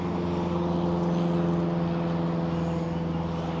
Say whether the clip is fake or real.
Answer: real